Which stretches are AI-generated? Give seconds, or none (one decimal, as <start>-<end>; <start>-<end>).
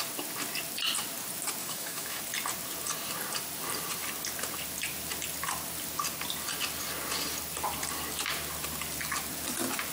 1.6-2.2